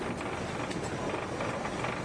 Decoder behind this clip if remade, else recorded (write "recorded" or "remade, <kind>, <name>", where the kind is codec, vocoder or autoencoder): recorded